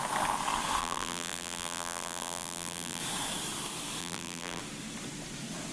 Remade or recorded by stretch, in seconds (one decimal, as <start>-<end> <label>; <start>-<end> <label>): 0.0-0.8 recorded; 0.8-3.0 remade; 3.0-4.0 recorded; 4.0-4.6 remade; 4.6-5.7 recorded